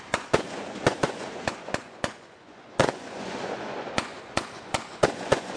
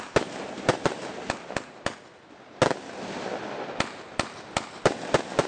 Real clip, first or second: second